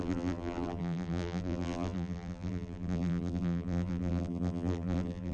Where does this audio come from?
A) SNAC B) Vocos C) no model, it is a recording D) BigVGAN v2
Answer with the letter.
D